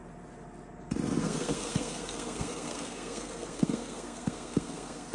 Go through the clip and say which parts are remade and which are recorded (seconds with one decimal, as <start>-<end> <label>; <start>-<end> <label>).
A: 0.0-1.2 recorded; 1.2-5.1 remade